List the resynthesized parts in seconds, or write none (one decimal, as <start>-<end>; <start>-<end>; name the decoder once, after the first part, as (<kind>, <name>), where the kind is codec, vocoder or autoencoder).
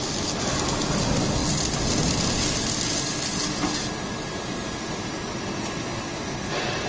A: none